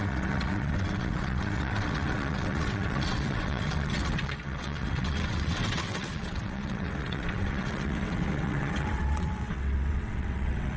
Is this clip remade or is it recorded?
remade